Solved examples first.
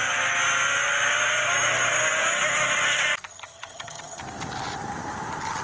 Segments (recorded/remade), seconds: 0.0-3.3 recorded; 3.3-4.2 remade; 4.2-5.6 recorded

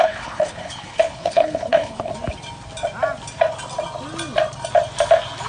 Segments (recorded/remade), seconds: 0.0-2.1 remade; 2.1-5.5 recorded

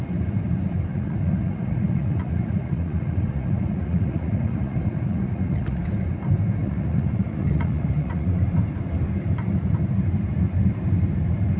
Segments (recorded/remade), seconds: 0.0-0.9 recorded; 0.9-5.8 remade; 5.8-6.6 recorded; 6.6-8.3 remade; 8.3-11.6 recorded

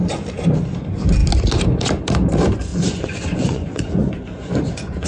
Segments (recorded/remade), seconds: 0.0-2.7 recorded; 2.7-5.1 remade

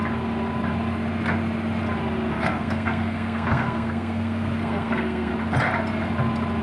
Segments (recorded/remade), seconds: 0.0-2.3 recorded; 2.3-5.3 remade; 5.3-6.6 recorded

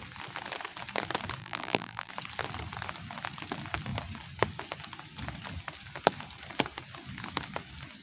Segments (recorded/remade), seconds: 0.0-1.4 recorded; 1.4-2.1 remade; 2.1-8.0 recorded

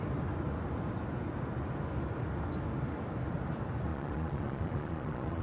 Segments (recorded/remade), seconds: 0.0-3.9 recorded; 3.9-5.4 remade

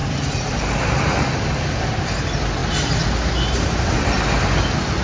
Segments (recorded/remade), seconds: 0.0-2.6 remade; 2.6-4.6 recorded; 4.6-5.0 remade